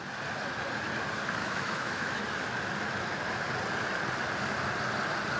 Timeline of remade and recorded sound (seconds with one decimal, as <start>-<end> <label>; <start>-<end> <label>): 0.0-1.4 recorded; 1.4-2.2 remade; 2.2-5.4 recorded